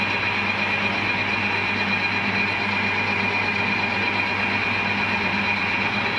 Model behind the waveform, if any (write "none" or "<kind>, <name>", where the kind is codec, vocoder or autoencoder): none